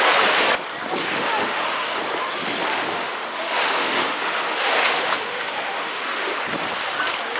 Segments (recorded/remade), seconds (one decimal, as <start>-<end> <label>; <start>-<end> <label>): 0.0-1.0 recorded; 1.0-2.0 remade; 2.0-2.7 recorded; 2.7-6.4 remade; 6.4-7.4 recorded